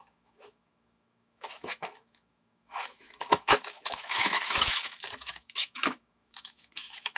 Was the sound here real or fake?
fake